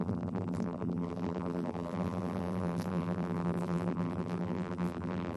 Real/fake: fake